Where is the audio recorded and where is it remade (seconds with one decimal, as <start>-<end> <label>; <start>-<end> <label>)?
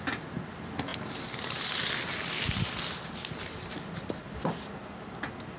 0.0-5.6 recorded